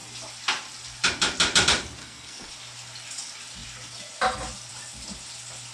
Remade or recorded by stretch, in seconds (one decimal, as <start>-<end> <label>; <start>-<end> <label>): 0.0-2.0 recorded; 2.0-2.5 remade; 2.5-5.7 recorded